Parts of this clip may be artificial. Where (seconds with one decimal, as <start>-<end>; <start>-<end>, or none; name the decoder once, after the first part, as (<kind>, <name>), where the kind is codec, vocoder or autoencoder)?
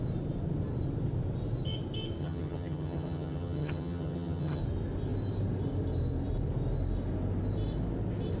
2.2-4.6 (vocoder, HiFi-GAN)